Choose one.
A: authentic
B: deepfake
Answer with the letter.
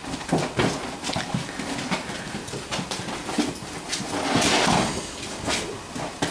A